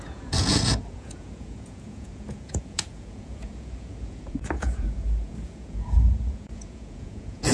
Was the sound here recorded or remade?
remade